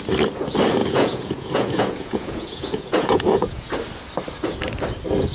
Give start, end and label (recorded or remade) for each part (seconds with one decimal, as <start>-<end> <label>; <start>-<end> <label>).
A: 0.0-0.8 recorded; 0.8-3.7 remade; 3.7-5.3 recorded